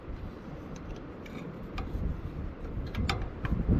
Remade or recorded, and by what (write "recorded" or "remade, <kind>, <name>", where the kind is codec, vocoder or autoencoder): remade, vocoder, BigVGAN v2